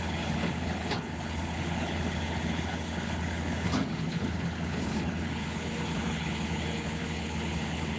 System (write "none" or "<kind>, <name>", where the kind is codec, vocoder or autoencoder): codec, HILCodec